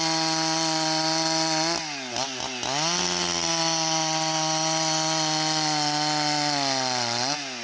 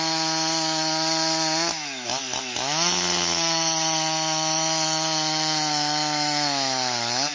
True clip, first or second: first